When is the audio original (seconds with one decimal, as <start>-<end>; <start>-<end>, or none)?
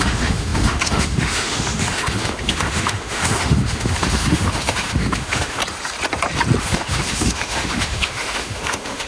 5.6-6.6